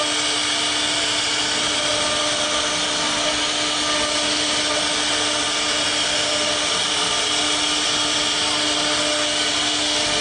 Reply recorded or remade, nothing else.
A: recorded